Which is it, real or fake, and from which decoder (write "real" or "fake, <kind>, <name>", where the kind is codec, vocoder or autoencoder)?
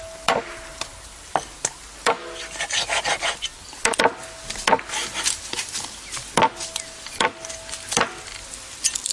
real